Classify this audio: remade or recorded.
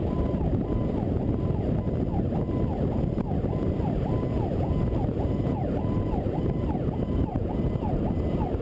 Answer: remade